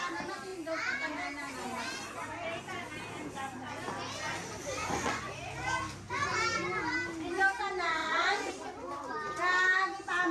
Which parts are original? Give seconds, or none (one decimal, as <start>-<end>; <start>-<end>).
0.0-4.8; 5.3-8.0; 8.5-10.3